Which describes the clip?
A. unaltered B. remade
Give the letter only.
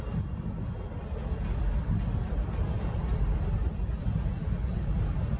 A